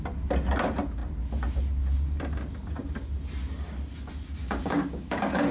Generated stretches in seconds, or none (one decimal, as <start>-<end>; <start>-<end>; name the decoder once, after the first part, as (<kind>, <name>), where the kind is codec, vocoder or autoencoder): 4.4-5.5 (codec, DAC)